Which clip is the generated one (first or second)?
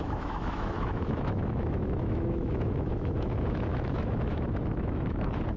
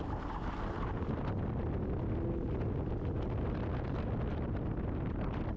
first